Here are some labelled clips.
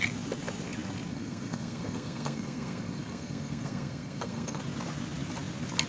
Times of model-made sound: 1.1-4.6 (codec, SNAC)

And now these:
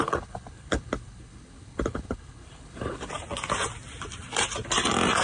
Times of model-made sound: 0.0-3.1 (codec, HILCodec)

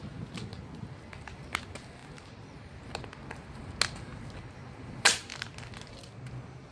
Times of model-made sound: none

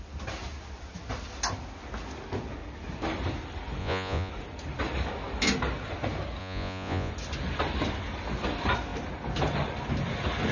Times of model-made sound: 3.8-4.3 (vocoder, Vocos); 6.4-7.1